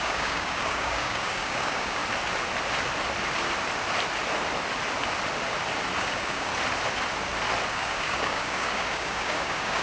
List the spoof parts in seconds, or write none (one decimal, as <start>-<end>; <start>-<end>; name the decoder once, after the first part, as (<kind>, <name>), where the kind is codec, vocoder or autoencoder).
0.0-2.0 (codec, DAC); 6.0-6.5; 7.7-9.8